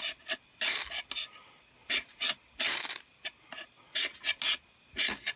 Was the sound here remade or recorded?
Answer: recorded